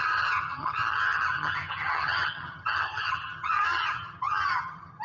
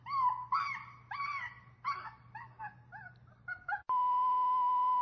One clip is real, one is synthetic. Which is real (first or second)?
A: second